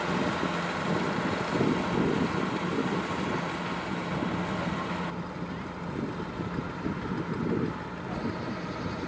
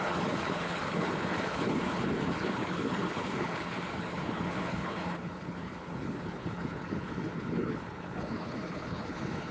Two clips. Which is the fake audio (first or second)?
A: second